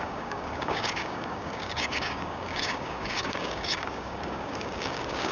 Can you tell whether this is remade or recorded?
remade